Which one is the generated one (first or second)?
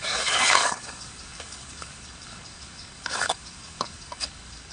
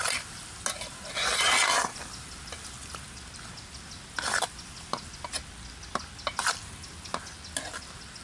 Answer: first